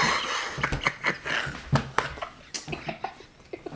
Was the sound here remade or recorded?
recorded